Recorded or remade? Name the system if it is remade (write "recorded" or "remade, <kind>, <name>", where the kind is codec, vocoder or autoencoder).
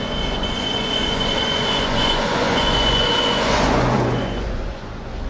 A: remade, vocoder, Vocos